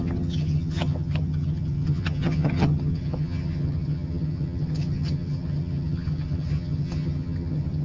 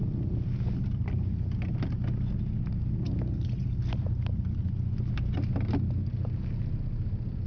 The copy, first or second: first